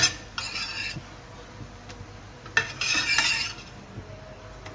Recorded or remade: recorded